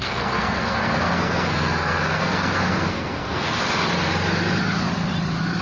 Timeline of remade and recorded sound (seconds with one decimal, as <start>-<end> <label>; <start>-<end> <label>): 0.0-3.6 remade; 3.6-5.6 recorded